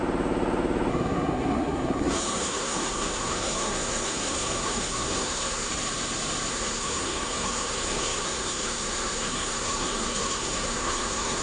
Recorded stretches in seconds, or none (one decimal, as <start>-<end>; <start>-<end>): 0.0-0.9; 5.7-6.5